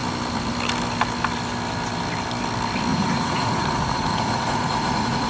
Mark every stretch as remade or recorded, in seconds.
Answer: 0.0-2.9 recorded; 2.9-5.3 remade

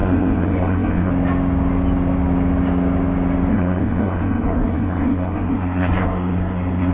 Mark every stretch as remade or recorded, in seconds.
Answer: 0.0-1.1 remade; 1.1-3.5 recorded; 3.5-6.9 remade

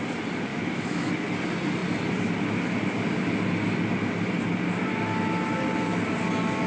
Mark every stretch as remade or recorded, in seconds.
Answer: 0.0-0.5 recorded; 0.5-1.1 remade; 1.1-6.7 recorded

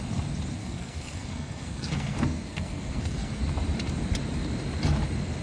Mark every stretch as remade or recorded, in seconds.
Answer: 0.0-0.6 recorded; 0.6-3.4 remade; 3.4-5.4 recorded

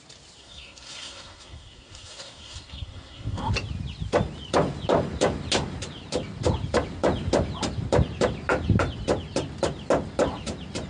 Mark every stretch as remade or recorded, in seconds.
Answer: 0.0-0.4 recorded; 0.4-3.5 remade; 3.5-10.9 recorded